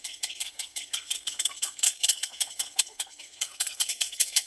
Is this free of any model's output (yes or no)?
no